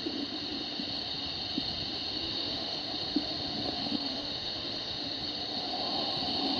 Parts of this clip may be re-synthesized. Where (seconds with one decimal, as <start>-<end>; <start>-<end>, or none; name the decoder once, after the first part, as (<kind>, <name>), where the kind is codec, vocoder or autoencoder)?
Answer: 2.2-2.8 (autoencoder, DAC-VAE); 3.8-5.2